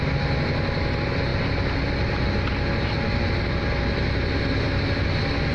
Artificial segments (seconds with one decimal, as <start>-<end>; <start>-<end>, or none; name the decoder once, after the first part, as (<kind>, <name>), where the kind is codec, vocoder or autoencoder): none